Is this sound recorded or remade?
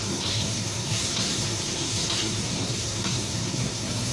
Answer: remade